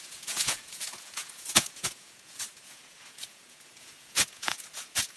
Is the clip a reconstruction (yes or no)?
yes